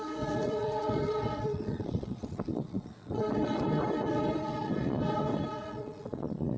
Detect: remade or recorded remade